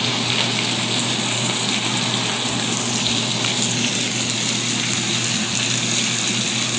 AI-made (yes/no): no